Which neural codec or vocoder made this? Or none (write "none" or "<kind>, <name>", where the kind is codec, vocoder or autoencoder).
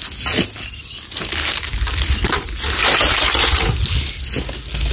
none